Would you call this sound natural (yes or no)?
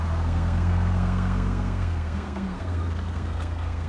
no